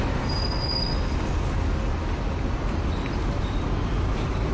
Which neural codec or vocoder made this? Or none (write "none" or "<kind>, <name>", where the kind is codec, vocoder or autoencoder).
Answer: none